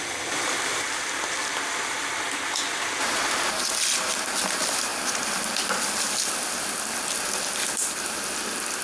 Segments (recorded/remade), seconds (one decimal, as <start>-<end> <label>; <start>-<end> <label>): 0.0-8.8 recorded